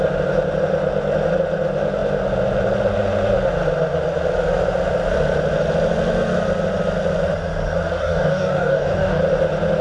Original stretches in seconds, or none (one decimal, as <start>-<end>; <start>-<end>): 0.0-8.0; 9.2-9.8